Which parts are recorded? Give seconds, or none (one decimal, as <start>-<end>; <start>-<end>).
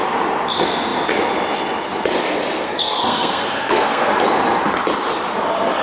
0.0-2.6; 4.1-5.8